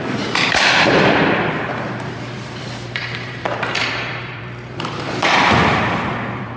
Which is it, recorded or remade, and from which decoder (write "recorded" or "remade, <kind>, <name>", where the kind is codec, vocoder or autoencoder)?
remade, vocoder, BigVGAN v2